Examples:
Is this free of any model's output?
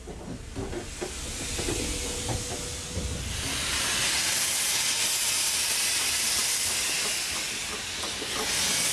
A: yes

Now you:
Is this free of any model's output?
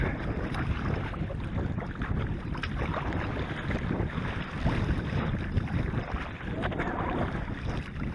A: no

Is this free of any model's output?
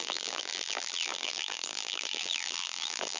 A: no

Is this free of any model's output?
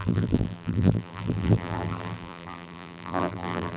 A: no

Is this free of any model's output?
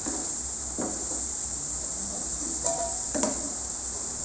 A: no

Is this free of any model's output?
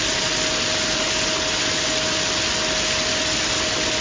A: yes